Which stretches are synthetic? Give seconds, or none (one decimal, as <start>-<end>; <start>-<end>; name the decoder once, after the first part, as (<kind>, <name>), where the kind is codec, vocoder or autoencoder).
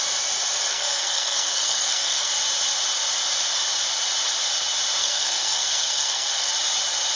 0.7-2.3 (codec, SNAC); 5.0-6.5